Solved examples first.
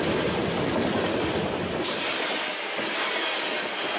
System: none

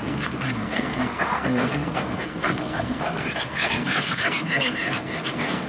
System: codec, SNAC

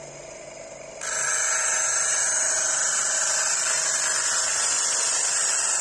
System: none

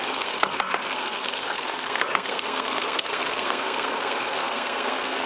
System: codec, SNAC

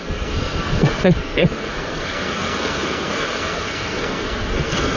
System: codec, SNAC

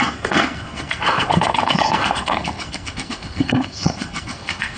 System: codec, SNAC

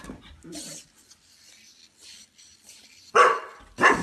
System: none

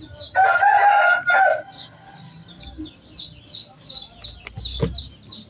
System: none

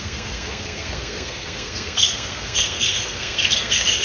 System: codec, SNAC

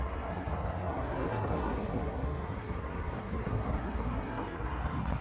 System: codec, SNAC